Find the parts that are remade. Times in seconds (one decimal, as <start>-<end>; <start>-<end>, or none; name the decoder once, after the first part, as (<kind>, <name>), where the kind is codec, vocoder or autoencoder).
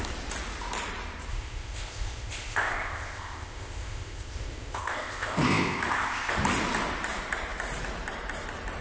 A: 1.3-6.3 (codec, ZipCodec)